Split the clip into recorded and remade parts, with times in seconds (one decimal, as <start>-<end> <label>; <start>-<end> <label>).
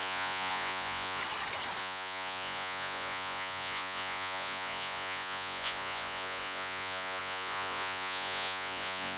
0.0-1.2 remade; 1.2-1.8 recorded; 1.8-9.2 remade